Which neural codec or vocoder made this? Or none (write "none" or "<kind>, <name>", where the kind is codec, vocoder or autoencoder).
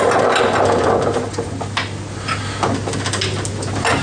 none